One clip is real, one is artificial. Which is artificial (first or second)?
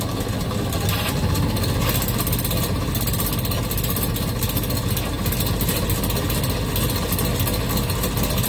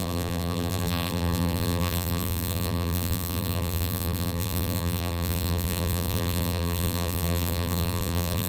second